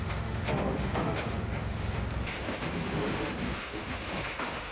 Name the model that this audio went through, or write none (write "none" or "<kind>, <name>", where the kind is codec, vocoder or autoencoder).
autoencoder, DAC-VAE